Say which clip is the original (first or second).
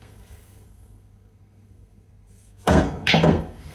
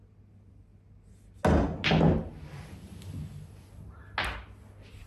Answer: second